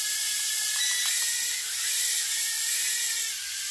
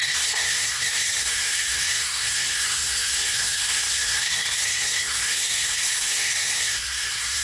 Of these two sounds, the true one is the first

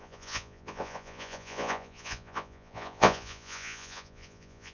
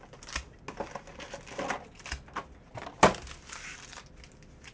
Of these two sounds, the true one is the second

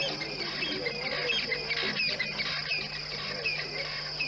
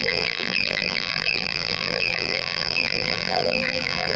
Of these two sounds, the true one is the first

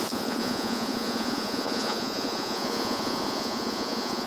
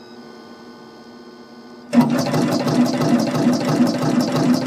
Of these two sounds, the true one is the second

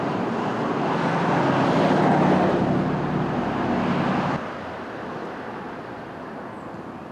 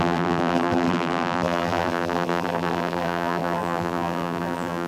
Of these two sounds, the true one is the first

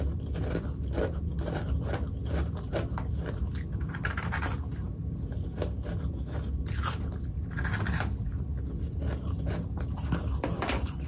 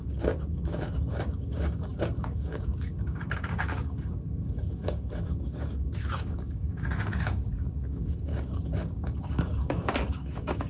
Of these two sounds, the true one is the first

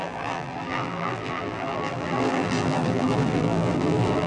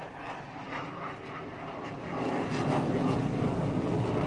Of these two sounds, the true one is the second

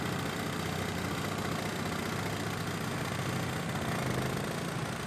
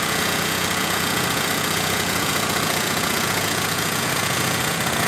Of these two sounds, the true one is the first